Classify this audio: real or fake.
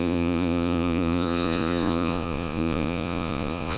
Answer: fake